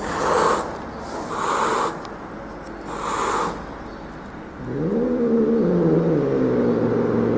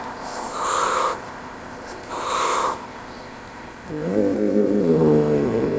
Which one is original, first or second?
first